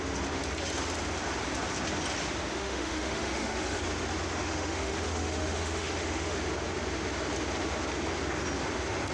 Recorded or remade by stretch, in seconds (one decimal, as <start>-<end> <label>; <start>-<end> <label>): 0.0-2.5 recorded; 2.5-3.8 remade; 3.8-4.4 recorded; 4.4-6.4 remade; 6.4-9.1 recorded